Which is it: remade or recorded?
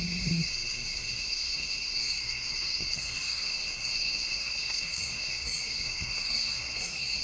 remade